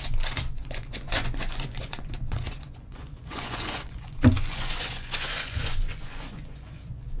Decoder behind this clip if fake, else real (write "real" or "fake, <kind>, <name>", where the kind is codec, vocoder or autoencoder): fake, vocoder, Vocos